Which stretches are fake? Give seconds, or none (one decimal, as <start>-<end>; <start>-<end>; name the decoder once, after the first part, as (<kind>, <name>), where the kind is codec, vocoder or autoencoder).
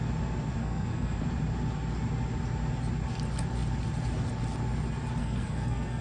0.6-1.2 (codec, SNAC); 5.2-6.0